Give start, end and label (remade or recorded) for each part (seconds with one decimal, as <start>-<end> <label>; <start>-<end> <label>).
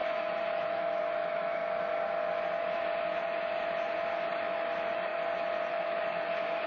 0.0-1.6 remade; 1.6-4.3 recorded; 4.3-5.1 remade; 5.1-5.7 recorded; 5.7-6.7 remade